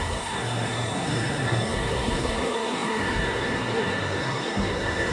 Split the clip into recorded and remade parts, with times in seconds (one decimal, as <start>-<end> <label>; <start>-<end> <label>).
0.0-5.1 remade

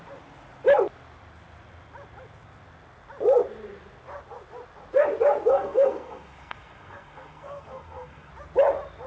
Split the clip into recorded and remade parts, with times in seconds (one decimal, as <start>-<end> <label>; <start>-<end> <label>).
0.0-5.5 recorded; 5.5-8.3 remade; 8.3-9.1 recorded

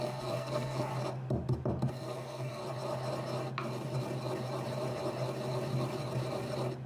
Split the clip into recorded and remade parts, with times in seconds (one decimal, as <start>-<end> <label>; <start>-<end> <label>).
0.0-0.9 remade; 0.9-1.9 recorded; 1.9-2.6 remade; 2.6-6.9 recorded

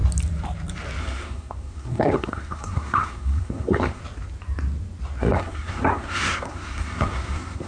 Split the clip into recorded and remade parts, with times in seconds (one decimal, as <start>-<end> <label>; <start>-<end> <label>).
0.0-1.0 recorded; 1.0-4.0 remade; 4.0-5.2 recorded; 5.2-7.7 remade